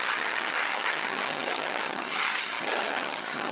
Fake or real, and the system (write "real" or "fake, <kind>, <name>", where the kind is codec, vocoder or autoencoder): fake, vocoder, HiFi-GAN